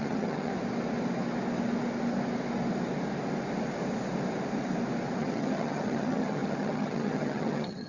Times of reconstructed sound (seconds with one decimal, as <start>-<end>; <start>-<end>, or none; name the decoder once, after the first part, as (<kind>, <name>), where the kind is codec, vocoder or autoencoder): 0.0-0.5 (vocoder, HiFi-GAN); 5.2-7.9